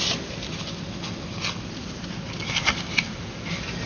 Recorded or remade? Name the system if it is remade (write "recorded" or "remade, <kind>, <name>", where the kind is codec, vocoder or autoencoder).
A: recorded